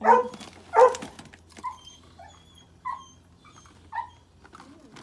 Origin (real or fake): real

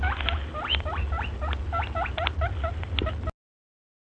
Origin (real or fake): real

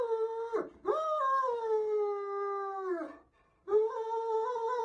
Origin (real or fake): real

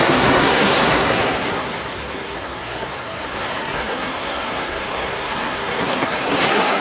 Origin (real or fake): fake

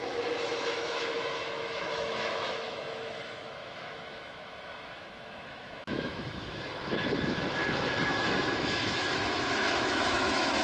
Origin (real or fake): fake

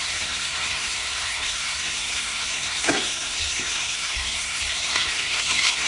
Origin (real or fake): fake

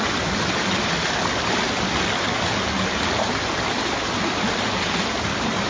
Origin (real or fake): real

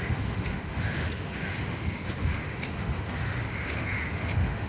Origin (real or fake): fake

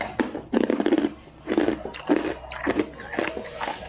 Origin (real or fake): real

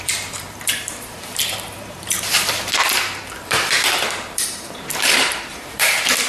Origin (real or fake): fake